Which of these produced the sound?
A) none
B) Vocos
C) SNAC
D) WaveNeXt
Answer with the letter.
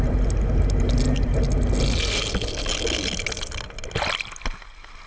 A